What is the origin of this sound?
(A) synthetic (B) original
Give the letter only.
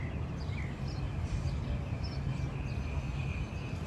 B